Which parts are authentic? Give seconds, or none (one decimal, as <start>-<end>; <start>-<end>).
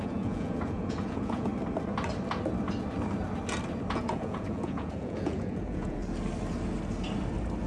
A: 1.5-3.9; 6.0-7.7